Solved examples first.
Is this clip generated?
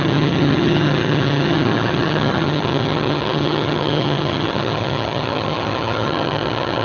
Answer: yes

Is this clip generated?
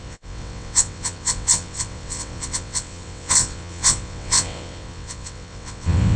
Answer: yes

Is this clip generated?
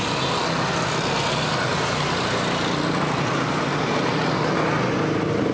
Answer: no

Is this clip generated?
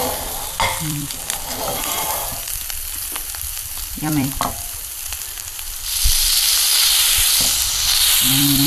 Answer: yes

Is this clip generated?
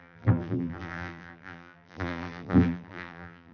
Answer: yes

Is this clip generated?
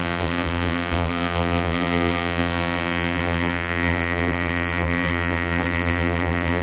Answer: yes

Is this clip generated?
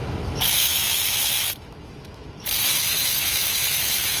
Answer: yes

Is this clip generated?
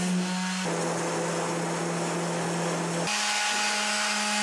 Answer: no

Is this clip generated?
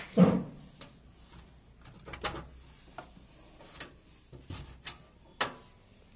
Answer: no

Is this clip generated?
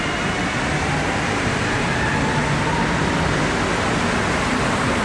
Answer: no